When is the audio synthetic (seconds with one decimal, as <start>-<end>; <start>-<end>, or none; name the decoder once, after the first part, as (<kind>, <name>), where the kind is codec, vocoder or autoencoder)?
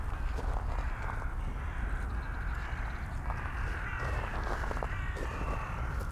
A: none